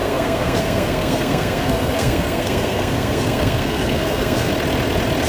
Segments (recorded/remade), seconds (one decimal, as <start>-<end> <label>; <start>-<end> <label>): 0.0-4.5 remade; 4.5-5.3 recorded